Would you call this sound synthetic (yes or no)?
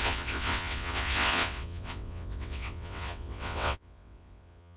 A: yes